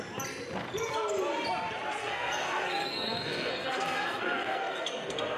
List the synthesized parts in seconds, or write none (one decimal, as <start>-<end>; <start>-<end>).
2.0-5.4